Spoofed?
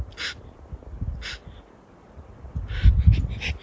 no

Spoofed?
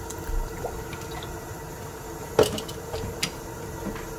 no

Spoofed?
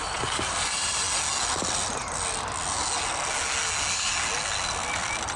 no